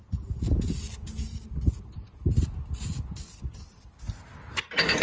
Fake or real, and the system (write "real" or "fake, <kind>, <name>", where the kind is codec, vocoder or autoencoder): real